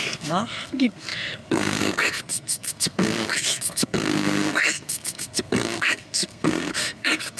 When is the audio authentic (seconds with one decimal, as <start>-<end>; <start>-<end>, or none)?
none